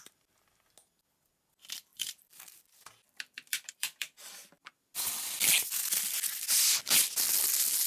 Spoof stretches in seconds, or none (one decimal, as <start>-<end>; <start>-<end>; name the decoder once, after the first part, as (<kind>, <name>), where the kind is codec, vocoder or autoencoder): 1.9-4.7 (vocoder, BigVGAN v2)